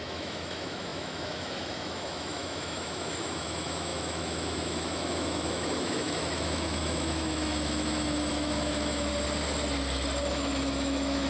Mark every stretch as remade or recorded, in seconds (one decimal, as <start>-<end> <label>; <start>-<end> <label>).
0.0-9.1 remade; 9.1-10.3 recorded; 10.3-11.3 remade